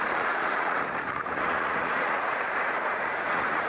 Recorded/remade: remade